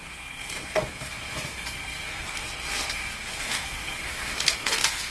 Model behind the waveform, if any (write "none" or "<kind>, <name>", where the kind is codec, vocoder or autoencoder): codec, SNAC